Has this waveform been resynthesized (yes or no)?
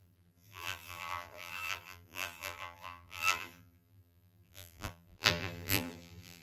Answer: yes